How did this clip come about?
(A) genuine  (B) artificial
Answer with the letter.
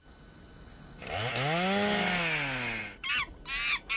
A